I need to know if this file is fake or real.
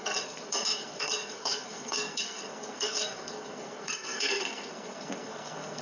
fake